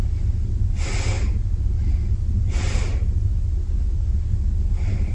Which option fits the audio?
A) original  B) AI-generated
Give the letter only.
A